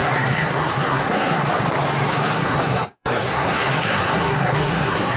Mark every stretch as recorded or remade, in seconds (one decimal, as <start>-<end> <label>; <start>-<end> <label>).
0.0-1.5 remade; 1.5-2.1 recorded; 2.1-5.2 remade